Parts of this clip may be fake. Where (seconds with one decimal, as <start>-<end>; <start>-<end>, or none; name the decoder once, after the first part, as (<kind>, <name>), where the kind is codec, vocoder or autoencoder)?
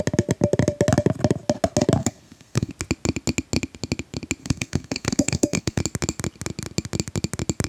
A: 2.0-2.7 (codec, SNAC); 4.4-5.8